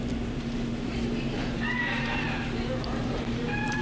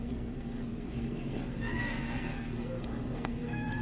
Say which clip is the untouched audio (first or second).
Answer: first